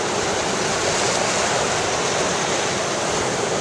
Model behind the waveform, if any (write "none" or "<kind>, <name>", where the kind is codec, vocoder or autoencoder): none